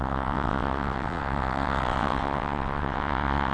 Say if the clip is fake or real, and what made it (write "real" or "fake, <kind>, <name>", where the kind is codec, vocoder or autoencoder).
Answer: fake, vocoder, WaveNeXt